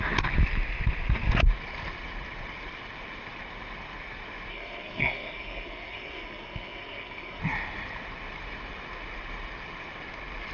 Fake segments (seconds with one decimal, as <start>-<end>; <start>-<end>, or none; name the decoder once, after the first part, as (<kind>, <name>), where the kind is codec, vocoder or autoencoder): 4.5-7.4 (codec, SNAC)